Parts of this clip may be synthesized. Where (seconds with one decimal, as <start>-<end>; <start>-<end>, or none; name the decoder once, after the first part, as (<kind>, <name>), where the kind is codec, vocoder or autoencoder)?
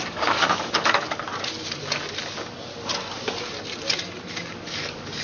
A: 0.0-1.3 (codec, DAC); 4.4-5.2